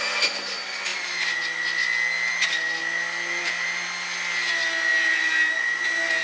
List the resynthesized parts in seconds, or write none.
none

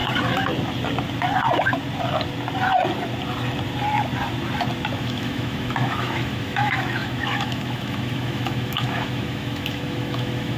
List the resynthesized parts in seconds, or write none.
5.0-10.6 (autoencoder, DAC-VAE)

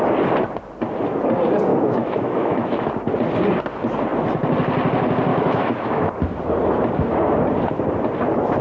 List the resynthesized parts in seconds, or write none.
1.7-2.9 (autoencoder, DAC-VAE); 5.3-6.1

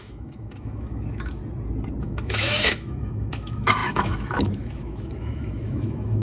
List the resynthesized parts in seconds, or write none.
0.0-1.4 (autoencoder, DAC-VAE); 2.0-6.2